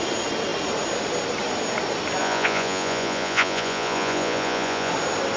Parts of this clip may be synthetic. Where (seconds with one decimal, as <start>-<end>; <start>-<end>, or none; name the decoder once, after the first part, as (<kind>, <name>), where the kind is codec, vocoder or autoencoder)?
2.2-4.9 (vocoder, Vocos)